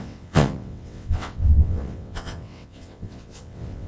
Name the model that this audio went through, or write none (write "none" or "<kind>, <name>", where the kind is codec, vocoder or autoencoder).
vocoder, WaveNeXt